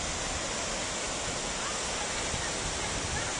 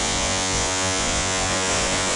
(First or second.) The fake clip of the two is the second